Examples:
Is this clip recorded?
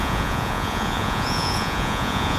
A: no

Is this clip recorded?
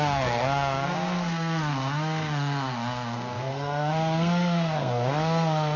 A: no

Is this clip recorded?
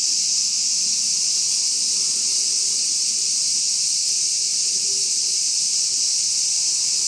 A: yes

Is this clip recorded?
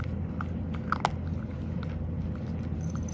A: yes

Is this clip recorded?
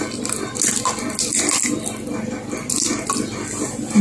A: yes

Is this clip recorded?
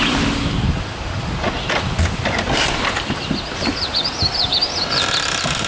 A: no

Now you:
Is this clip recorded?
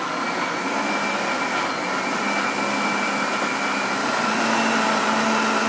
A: yes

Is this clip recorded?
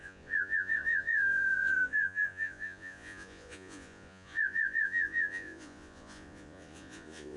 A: no